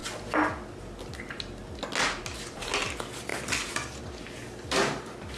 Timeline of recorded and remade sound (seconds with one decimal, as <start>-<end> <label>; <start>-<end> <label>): 0.0-5.4 recorded